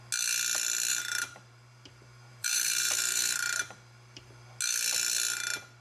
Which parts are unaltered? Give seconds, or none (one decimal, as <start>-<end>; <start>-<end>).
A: 0.0-0.9; 4.3-5.8